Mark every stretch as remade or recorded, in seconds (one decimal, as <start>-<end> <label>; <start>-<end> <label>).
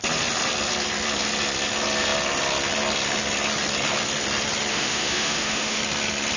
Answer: 0.0-4.7 recorded; 4.7-5.8 remade; 5.8-6.4 recorded